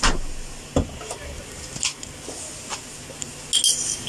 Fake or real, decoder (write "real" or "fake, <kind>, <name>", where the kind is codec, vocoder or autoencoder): real